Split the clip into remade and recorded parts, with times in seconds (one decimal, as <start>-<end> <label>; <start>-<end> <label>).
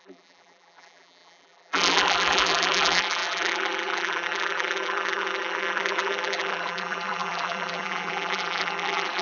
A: 0.0-9.2 remade